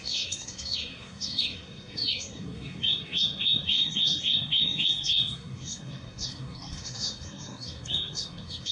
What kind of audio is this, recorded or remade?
remade